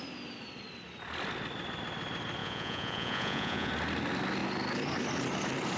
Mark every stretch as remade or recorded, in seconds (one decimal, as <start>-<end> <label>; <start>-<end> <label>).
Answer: 0.0-2.4 recorded; 2.4-3.7 remade; 3.7-5.8 recorded

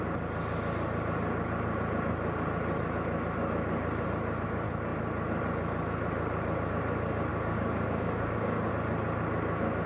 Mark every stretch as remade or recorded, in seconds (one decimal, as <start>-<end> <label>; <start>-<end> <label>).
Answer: 0.0-7.3 recorded; 7.3-8.7 remade; 8.7-9.9 recorded

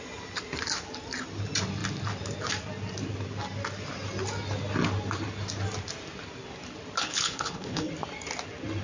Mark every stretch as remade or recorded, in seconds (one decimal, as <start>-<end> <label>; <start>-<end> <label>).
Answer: 0.0-7.0 recorded; 7.0-7.9 remade; 7.9-8.8 recorded

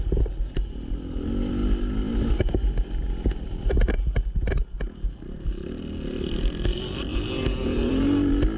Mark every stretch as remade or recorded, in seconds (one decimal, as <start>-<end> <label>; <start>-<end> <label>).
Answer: 0.0-8.6 recorded

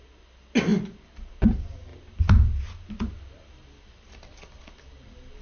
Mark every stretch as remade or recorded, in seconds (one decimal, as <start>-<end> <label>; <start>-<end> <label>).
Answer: 0.0-5.4 recorded

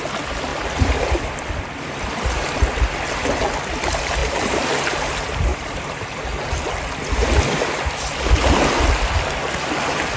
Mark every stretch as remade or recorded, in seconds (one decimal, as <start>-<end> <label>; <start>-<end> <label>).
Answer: 0.0-0.5 recorded; 0.5-2.7 remade; 2.7-4.2 recorded; 4.2-4.8 remade; 4.8-10.2 recorded